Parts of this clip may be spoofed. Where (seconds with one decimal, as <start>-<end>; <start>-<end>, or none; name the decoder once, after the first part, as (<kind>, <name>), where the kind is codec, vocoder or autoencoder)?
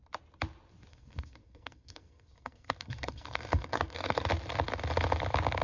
0.9-4.3 (codec, SNAC)